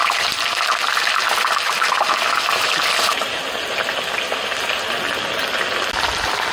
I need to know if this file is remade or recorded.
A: recorded